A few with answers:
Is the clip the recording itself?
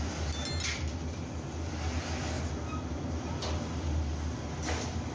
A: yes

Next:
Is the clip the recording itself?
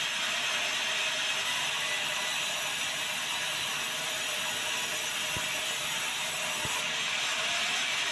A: yes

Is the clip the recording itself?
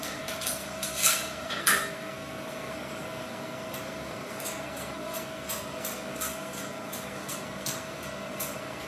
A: no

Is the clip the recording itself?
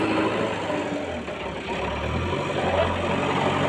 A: yes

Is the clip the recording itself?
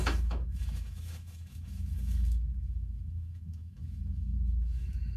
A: no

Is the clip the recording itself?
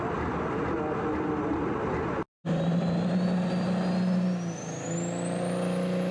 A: yes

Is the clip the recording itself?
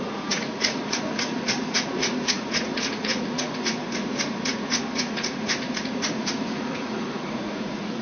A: no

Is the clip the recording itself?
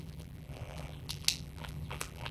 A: no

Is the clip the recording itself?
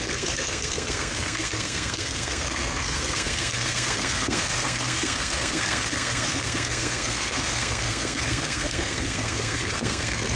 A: no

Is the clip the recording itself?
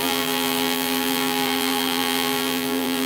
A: no